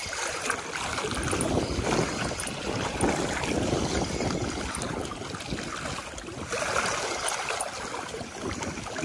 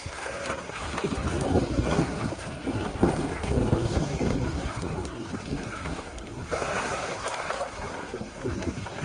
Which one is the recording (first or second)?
first